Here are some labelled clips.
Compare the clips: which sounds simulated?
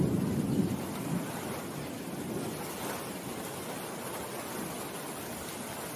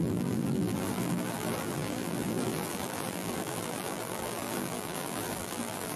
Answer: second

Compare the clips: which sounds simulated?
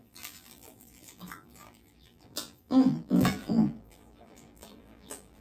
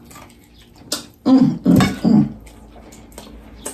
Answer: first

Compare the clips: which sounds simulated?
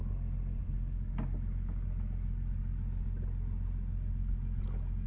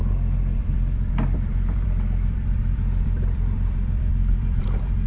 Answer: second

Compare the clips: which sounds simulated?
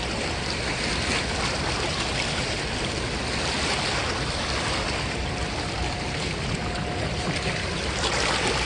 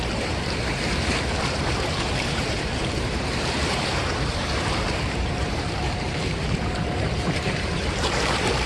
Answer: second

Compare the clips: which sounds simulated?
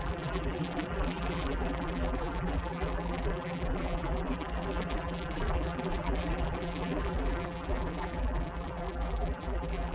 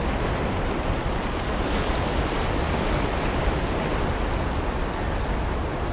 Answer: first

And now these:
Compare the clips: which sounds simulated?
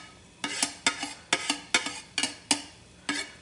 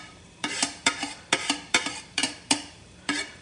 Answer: second